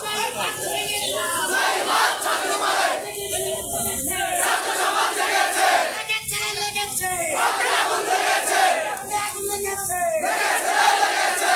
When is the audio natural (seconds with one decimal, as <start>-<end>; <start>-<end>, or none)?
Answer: 0.0-11.6